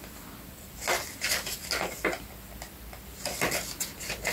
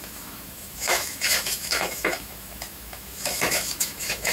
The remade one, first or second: second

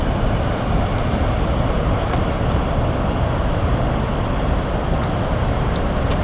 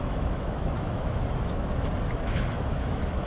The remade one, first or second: second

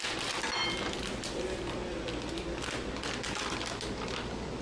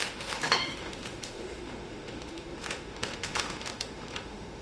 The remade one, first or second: second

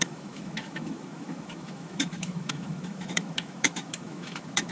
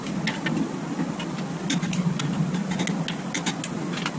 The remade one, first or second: first